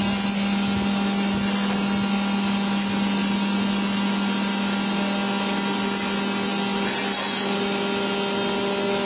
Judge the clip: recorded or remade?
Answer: recorded